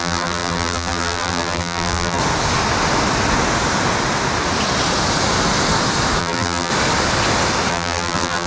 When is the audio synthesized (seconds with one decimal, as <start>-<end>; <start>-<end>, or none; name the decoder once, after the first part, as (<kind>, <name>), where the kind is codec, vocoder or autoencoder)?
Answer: 0.0-2.2 (vocoder, BigVGAN v2); 6.2-6.7; 7.7-8.5